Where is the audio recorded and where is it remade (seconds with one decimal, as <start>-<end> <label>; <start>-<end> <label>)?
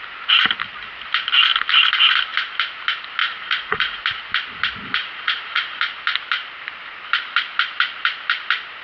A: 0.0-3.2 recorded; 3.2-4.0 remade; 4.0-5.0 recorded; 5.0-5.8 remade; 5.8-8.8 recorded